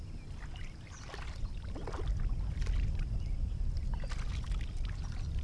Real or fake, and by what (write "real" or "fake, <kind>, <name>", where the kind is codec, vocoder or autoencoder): real